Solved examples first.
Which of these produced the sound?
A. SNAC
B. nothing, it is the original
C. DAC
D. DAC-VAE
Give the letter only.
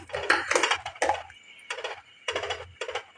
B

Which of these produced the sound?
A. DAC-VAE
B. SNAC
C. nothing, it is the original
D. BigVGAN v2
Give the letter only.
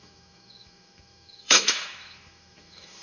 A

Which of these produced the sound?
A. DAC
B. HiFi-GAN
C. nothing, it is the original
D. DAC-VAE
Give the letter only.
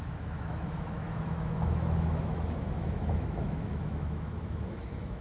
D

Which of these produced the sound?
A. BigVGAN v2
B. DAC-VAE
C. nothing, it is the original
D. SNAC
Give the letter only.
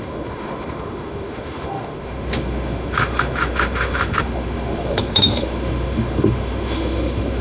B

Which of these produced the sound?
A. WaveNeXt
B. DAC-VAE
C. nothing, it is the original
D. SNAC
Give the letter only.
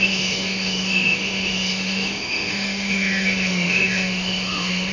B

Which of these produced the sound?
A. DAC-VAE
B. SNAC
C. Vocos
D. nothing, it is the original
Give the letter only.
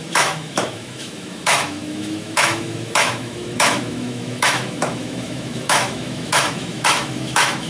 A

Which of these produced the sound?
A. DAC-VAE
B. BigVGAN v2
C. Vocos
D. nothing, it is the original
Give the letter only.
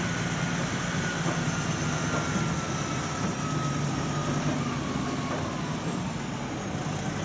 D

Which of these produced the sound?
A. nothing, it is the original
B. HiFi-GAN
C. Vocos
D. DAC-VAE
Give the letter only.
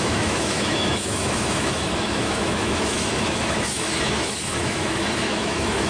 D